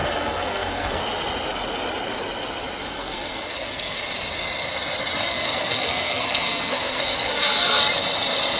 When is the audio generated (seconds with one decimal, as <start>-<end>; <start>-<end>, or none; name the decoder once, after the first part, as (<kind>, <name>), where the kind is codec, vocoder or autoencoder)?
0.0-1.0 (codec, SNAC); 2.9-4.0; 5.2-7.8